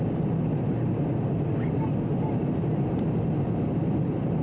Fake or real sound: real